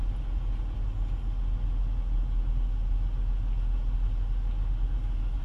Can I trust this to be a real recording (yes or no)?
yes